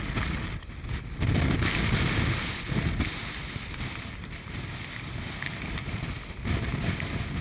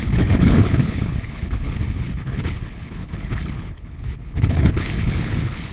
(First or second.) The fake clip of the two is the second